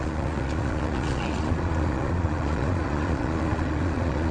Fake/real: fake